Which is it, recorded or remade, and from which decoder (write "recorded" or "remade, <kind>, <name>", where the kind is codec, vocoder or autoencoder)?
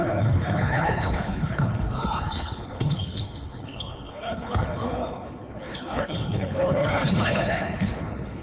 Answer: remade, codec, HILCodec